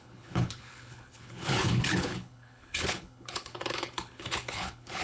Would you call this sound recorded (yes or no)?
no